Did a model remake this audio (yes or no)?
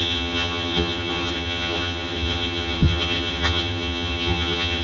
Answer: yes